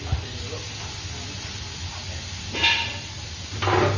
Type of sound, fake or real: real